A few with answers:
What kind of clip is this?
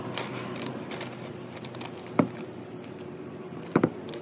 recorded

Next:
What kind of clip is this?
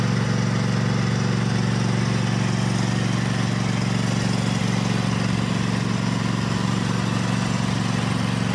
recorded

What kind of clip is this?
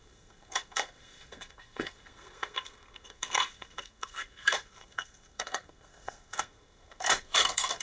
remade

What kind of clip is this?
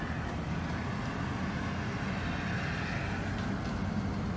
recorded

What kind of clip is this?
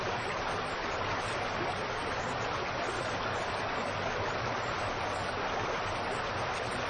recorded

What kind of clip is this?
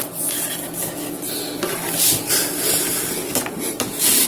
recorded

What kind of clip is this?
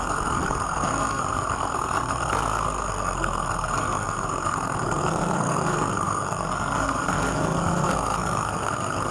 remade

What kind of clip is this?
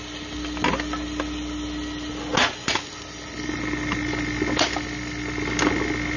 recorded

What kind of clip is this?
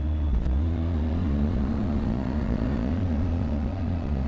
remade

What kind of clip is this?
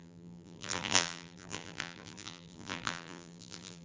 remade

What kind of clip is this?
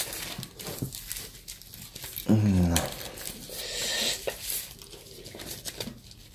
recorded